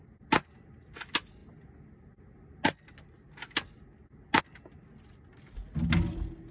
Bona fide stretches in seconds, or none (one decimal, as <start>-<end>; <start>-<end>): 0.0-6.5